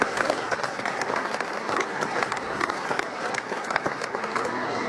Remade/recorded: remade